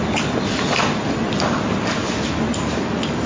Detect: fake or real real